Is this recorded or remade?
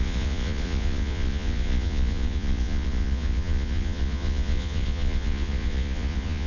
remade